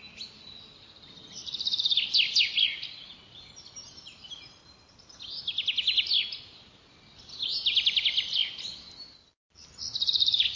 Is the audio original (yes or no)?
yes